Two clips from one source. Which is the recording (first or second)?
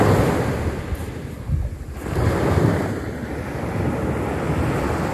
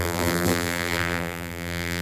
first